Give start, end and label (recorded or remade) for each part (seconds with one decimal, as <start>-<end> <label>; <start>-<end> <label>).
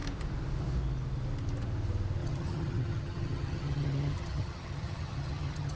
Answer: 0.0-2.2 recorded; 2.2-5.8 remade